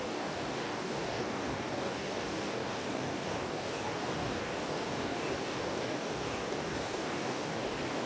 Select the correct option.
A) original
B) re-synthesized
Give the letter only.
B